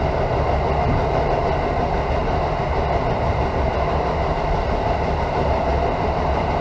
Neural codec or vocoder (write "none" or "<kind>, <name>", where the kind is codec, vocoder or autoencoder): none